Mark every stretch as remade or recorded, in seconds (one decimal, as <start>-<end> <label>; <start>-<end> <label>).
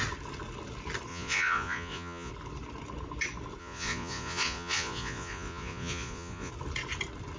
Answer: 0.0-1.1 recorded; 1.1-2.3 remade; 2.3-3.6 recorded; 3.6-6.5 remade; 6.5-7.4 recorded